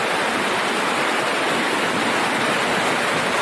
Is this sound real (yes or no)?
yes